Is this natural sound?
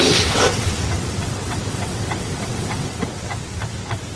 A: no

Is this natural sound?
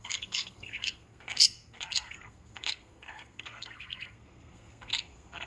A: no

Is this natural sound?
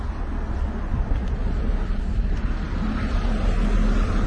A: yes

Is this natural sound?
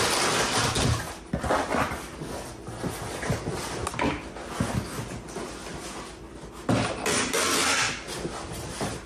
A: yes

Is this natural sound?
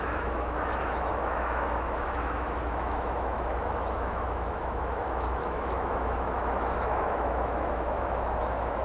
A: no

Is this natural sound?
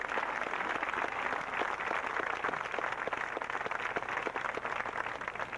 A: yes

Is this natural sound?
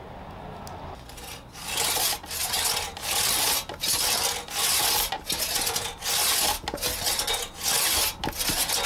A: yes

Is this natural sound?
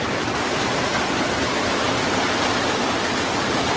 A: no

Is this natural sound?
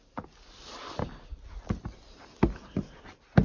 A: yes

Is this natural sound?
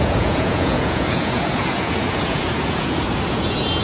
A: no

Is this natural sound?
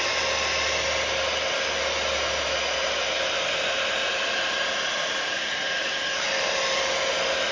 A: yes